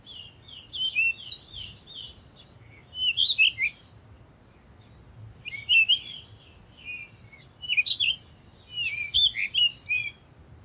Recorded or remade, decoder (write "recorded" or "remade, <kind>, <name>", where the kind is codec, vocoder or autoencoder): recorded